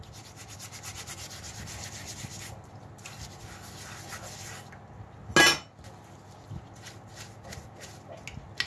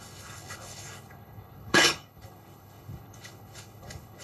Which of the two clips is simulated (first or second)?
second